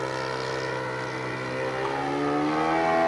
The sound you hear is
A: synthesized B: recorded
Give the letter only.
B